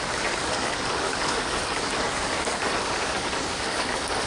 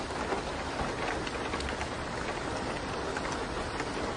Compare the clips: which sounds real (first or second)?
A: second